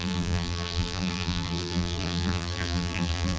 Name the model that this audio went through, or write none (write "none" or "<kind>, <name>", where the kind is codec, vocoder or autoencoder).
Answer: vocoder, BigVGAN v2